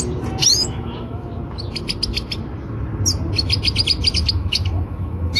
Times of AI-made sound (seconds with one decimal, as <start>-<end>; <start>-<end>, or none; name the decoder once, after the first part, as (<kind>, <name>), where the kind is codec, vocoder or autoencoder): 0.5-1.3 (autoencoder, DAC-VAE); 4.2-5.4